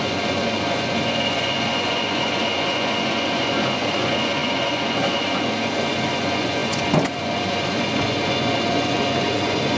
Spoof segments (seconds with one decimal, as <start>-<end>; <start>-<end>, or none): 0.0-9.8